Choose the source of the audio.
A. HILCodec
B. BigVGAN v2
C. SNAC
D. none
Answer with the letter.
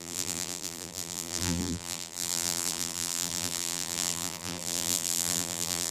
B